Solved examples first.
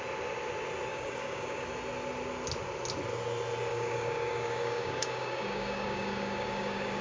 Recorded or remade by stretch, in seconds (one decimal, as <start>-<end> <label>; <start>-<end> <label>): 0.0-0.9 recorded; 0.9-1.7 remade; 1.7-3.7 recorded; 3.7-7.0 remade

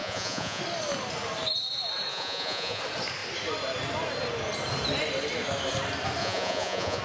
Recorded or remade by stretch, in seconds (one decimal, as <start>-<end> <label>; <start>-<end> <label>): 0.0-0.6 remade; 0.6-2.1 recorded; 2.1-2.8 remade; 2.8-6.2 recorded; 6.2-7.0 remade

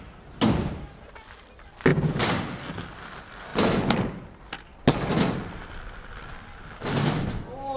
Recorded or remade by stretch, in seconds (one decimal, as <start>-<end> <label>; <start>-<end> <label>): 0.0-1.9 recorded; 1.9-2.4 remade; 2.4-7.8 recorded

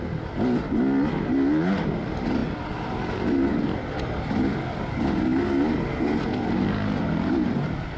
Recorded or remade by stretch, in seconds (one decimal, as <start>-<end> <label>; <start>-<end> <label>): 0.0-8.0 recorded

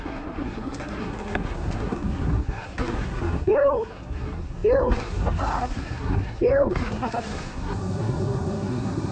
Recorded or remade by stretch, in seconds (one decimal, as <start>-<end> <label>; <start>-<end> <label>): 0.0-9.1 remade

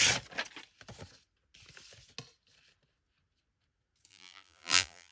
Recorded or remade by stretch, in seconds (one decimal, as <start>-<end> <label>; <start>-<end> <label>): 0.0-4.1 recorded; 4.1-5.1 remade

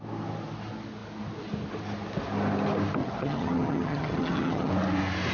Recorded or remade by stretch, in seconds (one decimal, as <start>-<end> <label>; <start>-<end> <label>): 0.0-3.0 recorded; 3.0-4.7 remade; 4.7-5.3 recorded

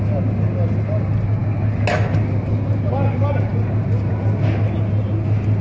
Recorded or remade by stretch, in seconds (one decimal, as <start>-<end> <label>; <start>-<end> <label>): 0.0-5.6 recorded